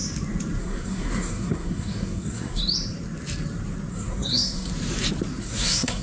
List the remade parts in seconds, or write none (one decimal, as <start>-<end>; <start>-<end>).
0.6-2.6; 3.9-4.7; 5.4-6.0